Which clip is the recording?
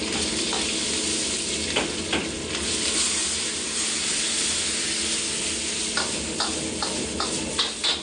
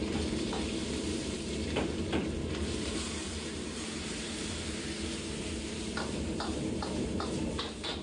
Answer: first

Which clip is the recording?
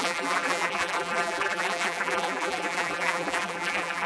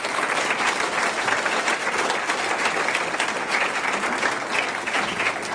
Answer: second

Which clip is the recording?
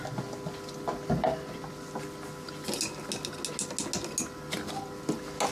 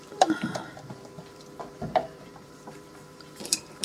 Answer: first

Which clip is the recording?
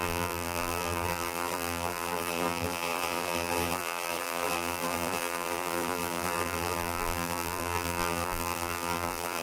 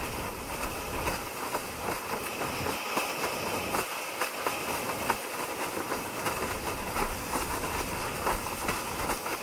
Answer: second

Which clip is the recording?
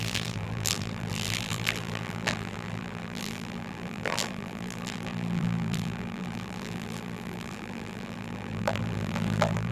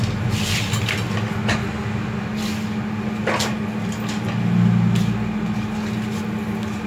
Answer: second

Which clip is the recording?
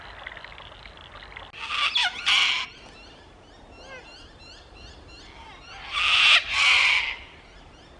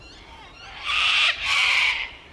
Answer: first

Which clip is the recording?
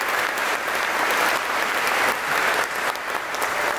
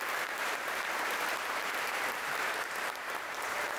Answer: first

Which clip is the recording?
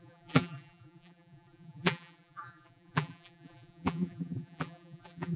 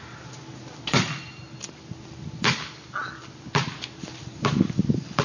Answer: second